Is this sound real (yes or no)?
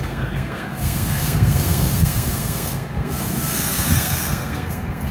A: no